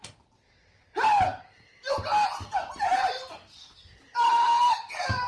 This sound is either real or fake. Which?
real